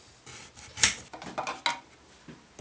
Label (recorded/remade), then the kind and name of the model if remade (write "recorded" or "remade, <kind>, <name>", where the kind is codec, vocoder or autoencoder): recorded